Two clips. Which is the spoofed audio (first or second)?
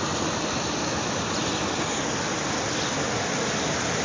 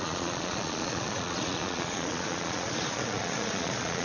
second